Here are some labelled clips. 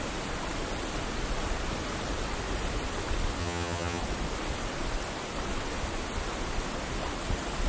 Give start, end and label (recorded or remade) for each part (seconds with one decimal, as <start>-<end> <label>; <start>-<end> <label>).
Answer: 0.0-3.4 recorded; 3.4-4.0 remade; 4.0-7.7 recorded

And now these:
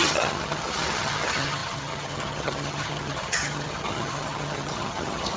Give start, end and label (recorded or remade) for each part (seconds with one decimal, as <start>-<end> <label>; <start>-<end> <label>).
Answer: 0.0-5.4 remade

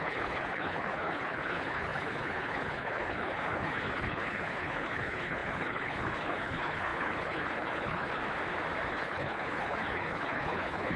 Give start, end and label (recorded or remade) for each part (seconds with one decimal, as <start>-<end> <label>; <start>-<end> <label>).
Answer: 0.0-8.2 remade; 8.2-8.9 recorded; 8.9-11.0 remade